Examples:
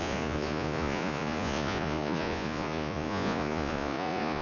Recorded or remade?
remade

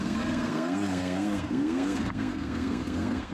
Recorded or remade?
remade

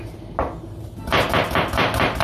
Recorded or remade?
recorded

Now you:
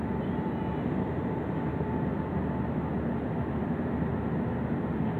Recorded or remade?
recorded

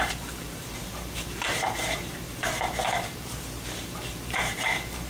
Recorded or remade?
remade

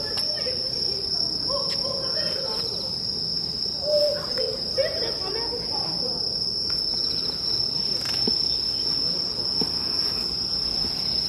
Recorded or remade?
recorded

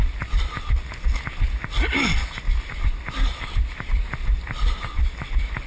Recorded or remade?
recorded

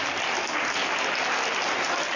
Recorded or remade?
recorded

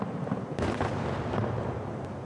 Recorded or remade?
recorded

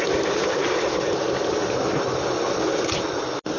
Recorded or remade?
recorded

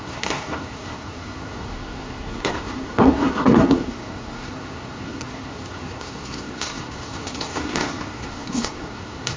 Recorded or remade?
remade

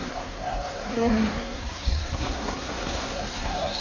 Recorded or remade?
remade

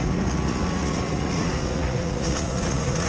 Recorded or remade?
remade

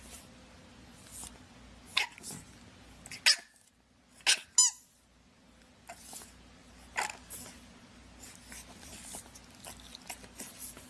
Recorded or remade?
recorded